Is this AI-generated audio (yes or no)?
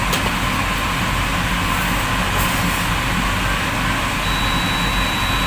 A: no